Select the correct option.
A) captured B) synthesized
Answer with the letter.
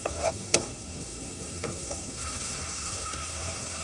B